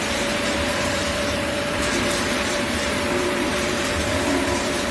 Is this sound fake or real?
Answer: fake